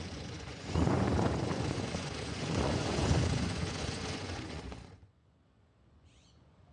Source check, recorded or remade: remade